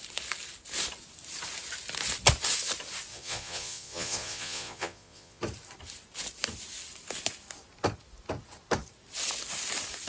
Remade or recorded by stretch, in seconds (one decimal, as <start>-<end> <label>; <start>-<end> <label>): 0.0-3.1 recorded; 3.1-5.4 remade; 5.4-10.1 recorded